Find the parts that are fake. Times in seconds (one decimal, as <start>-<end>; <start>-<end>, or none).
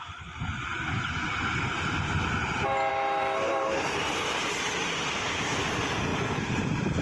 2.9-4.6